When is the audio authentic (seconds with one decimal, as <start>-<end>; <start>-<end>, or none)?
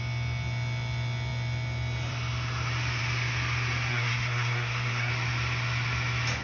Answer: 0.0-3.9; 5.1-6.4